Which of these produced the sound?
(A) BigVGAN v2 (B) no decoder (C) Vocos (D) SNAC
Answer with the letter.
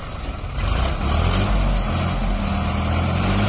B